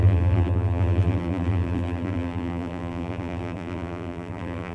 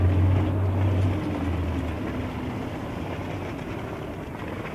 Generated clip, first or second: first